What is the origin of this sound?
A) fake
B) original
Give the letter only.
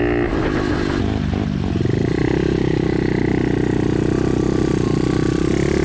B